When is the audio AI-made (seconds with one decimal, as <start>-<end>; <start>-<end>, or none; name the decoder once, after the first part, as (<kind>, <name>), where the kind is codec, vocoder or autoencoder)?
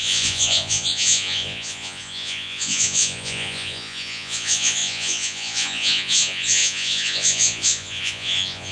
0.0-8.7 (vocoder, Vocos)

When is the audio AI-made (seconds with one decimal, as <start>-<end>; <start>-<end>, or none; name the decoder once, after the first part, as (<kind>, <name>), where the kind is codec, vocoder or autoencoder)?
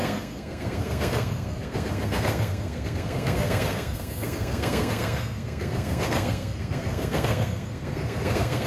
0.0-8.7 (codec, SNAC)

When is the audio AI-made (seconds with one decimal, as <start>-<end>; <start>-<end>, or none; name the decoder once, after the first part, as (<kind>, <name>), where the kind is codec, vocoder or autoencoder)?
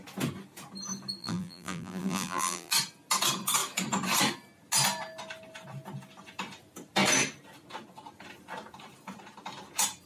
1.2-2.7 (vocoder, BigVGAN v2)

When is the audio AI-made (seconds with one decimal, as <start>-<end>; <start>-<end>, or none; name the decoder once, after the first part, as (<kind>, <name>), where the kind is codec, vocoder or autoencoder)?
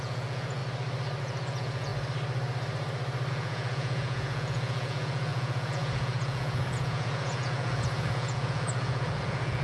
0.0-0.6 (vocoder, Vocos); 1.2-1.9; 3.3-9.6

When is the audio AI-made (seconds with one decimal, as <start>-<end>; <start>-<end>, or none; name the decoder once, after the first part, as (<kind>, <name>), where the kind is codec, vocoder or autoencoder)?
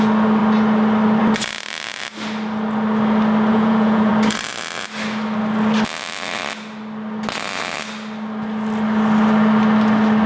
3.5-4.1 (vocoder, Vocos)